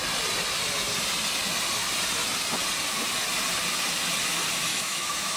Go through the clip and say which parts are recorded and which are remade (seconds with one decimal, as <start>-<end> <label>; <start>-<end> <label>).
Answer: 0.0-4.7 recorded; 4.7-5.4 remade